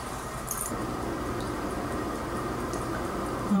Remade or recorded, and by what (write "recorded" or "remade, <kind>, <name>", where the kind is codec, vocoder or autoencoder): remade, vocoder, BigVGAN v2